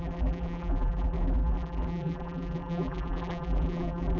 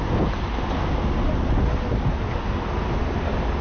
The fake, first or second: first